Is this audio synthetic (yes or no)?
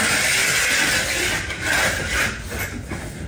no